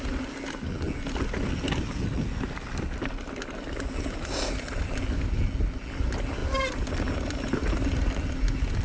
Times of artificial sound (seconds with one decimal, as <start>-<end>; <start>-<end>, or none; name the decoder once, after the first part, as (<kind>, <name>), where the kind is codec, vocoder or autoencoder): none